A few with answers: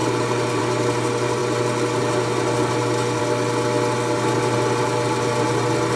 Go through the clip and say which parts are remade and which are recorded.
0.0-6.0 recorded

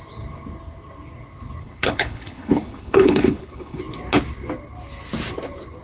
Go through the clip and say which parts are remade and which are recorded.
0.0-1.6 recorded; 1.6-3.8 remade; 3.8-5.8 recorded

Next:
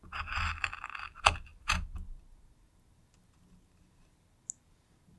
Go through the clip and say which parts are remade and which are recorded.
0.0-5.2 recorded